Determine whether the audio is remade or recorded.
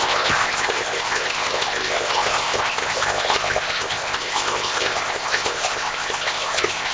remade